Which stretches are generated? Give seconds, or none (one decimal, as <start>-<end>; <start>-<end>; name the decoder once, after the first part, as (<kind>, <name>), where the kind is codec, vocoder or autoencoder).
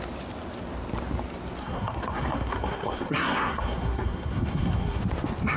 1.6-5.0 (codec, SNAC)